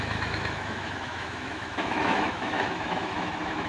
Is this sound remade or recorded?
remade